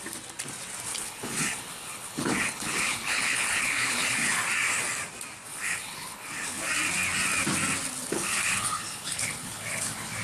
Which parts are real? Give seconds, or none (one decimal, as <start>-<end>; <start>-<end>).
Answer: 0.0-0.9; 4.4-5.5; 6.7-8.0